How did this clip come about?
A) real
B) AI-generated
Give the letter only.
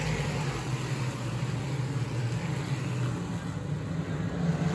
A